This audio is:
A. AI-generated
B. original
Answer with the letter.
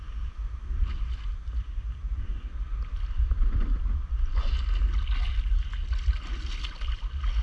B